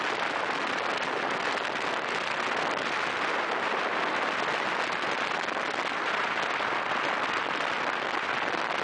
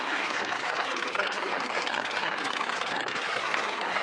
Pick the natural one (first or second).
first